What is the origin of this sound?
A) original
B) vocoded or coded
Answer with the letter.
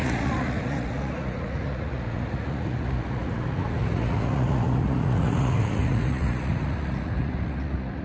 B